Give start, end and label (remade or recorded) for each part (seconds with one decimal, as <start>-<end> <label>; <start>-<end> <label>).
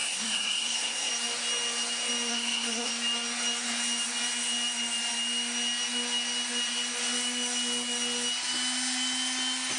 0.0-1.1 remade; 1.1-2.3 recorded; 2.3-2.9 remade; 2.9-9.8 recorded